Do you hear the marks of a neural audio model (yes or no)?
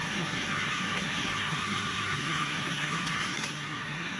yes